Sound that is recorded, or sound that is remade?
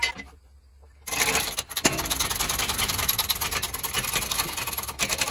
recorded